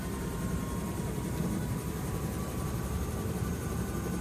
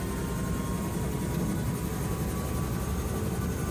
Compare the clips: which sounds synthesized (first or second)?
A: first